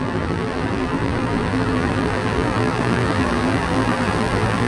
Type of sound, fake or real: fake